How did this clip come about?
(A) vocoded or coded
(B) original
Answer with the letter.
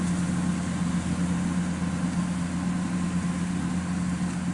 B